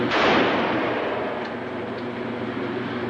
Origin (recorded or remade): remade